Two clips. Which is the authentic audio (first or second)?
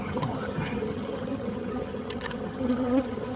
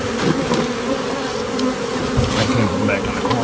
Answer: second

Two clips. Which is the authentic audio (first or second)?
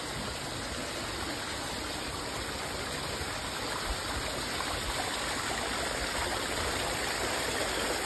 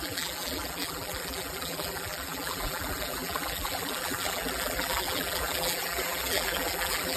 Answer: first